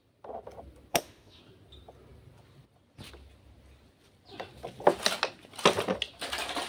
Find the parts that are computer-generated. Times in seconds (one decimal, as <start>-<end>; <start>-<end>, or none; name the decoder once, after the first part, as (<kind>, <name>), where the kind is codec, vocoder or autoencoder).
0.9-1.4 (autoencoder, DAC-VAE)